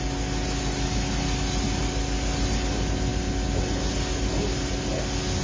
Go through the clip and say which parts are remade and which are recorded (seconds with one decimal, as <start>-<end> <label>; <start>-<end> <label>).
0.0-5.4 recorded